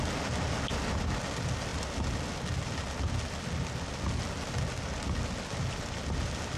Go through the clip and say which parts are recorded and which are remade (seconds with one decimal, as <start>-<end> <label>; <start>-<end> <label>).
0.0-6.6 recorded